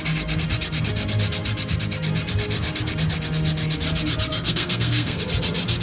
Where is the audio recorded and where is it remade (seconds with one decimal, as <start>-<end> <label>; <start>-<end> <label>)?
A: 0.0-4.3 recorded; 4.3-5.2 remade; 5.2-5.8 recorded

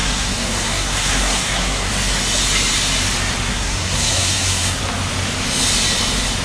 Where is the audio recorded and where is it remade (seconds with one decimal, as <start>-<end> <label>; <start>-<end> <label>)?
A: 0.0-1.9 remade; 1.9-3.5 recorded; 3.5-4.8 remade; 4.8-6.4 recorded

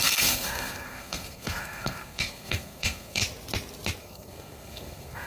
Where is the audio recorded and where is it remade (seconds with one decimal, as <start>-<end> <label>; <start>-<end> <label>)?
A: 0.0-3.2 remade; 3.2-4.0 recorded; 4.0-5.3 remade